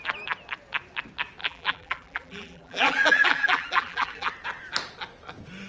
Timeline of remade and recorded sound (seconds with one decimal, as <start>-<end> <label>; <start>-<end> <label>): 0.0-1.4 recorded; 1.4-4.3 remade; 4.3-5.7 recorded